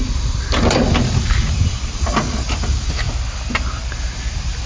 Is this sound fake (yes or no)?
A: no